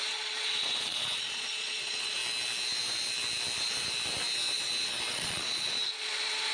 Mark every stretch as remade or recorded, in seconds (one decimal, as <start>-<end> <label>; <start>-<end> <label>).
0.0-2.2 remade; 2.2-5.1 recorded; 5.1-6.5 remade